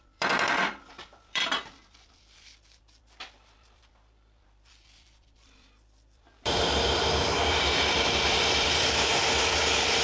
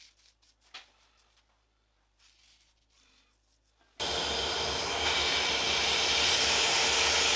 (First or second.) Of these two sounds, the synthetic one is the first